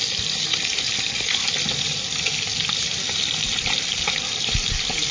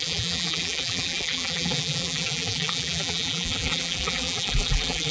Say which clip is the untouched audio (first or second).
first